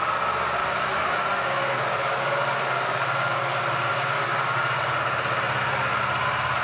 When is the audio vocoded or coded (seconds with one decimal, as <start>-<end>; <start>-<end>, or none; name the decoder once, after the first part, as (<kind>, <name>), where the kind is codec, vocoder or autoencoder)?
0.6-4.6 (codec, DAC)